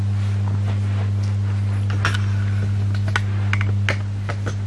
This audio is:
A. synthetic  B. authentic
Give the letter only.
B